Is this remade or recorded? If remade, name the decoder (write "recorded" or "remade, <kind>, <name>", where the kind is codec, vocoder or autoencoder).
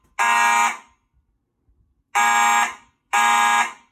recorded